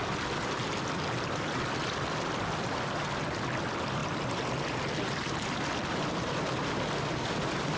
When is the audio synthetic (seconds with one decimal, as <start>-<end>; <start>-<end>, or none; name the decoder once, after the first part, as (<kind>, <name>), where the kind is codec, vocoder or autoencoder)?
none